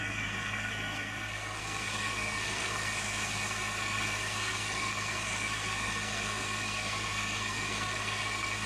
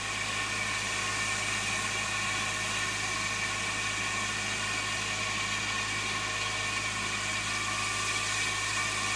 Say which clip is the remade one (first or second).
first